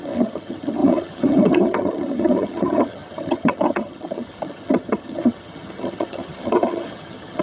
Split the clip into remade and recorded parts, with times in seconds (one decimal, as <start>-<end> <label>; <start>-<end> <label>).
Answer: 0.0-7.4 remade